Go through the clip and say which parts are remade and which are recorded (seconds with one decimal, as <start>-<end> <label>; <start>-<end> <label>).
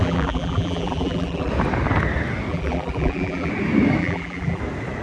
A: 0.0-1.5 remade; 1.5-2.5 recorded; 2.5-3.5 remade; 3.5-4.0 recorded; 4.0-4.6 remade; 4.6-5.0 recorded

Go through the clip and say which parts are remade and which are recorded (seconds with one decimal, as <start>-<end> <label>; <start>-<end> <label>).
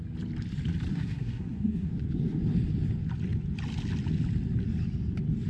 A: 0.0-0.9 recorded; 0.9-1.9 remade; 1.9-5.5 recorded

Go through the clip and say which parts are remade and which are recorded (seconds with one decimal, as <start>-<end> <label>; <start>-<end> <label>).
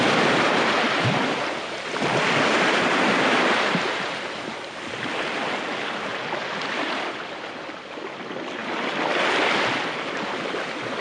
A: 0.0-11.0 recorded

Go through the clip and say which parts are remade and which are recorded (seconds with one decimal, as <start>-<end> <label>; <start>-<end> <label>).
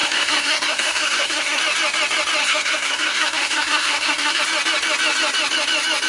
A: 0.0-1.6 remade; 1.6-2.4 recorded; 2.4-4.4 remade; 4.4-6.1 recorded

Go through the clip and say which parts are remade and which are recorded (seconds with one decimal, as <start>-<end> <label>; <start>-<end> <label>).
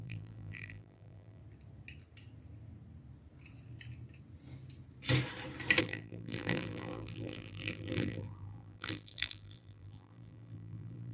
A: 0.0-1.4 remade; 1.4-5.8 recorded; 5.8-11.1 remade